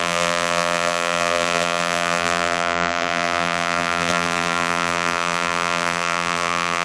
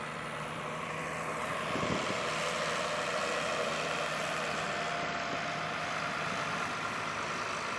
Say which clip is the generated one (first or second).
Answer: first